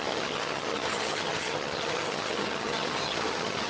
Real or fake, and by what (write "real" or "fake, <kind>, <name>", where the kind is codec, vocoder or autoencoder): fake, vocoder, HiFi-GAN